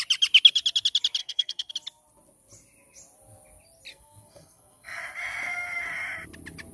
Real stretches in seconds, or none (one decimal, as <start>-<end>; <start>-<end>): 0.0-1.2; 1.7-3.9; 5.0-6.7